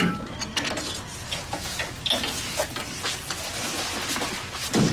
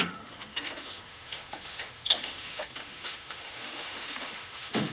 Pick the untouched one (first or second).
first